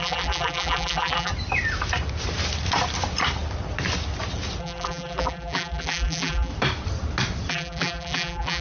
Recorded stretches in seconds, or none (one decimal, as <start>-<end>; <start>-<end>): 1.3-4.6; 6.5-7.5